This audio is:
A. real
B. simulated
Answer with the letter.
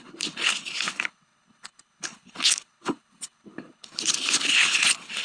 B